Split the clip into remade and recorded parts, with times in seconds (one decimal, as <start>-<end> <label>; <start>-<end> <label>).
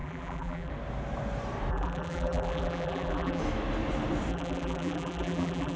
0.0-0.7 remade; 0.7-1.7 recorded; 1.7-3.4 remade; 3.4-4.3 recorded; 4.3-5.8 remade